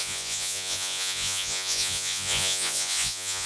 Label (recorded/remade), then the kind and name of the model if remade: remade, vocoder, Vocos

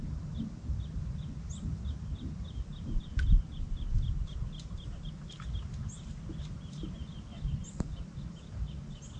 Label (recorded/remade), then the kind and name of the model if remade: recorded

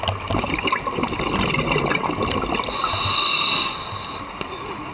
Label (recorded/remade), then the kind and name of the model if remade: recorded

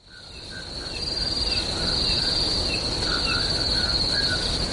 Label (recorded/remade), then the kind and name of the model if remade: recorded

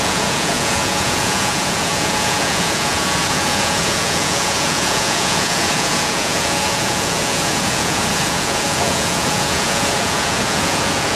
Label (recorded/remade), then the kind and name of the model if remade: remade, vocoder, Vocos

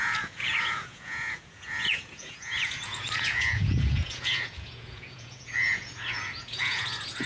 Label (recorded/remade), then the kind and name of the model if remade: remade, vocoder, Vocos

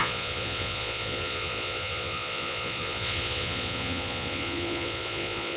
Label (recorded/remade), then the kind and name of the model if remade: remade, vocoder, Vocos